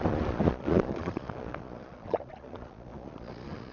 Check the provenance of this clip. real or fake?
fake